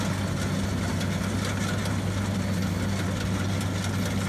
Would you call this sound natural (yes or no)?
yes